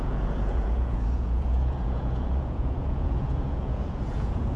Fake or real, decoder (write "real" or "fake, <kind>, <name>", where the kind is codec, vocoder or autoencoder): fake, vocoder, Vocos